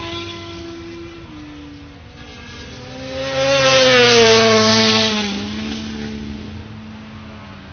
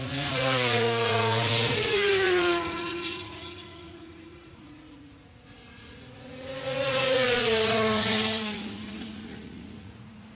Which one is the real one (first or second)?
first